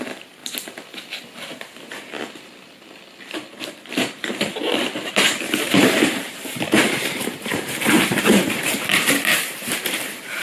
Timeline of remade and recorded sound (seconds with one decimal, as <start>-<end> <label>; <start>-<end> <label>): 0.0-0.4 remade; 0.4-5.1 recorded; 5.1-10.4 remade